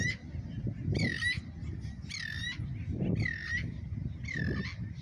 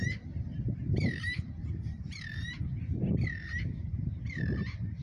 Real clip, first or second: first